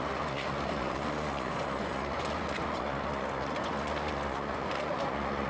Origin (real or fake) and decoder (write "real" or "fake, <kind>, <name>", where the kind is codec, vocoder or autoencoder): fake, vocoder, Vocos